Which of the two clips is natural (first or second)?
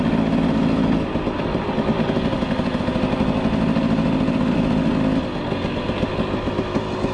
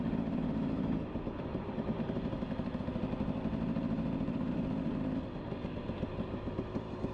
first